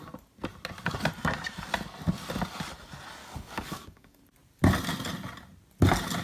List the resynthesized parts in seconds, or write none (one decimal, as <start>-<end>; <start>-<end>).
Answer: 3.2-4.2